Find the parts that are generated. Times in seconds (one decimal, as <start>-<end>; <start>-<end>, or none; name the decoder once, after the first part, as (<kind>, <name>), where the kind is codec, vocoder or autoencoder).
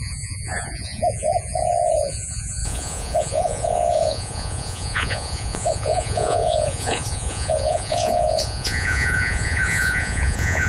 0.0-10.7 (vocoder, Vocos)